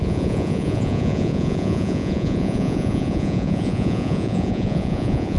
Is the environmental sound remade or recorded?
remade